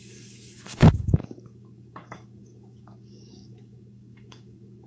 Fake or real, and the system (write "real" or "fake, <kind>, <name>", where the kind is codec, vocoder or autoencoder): fake, codec, DAC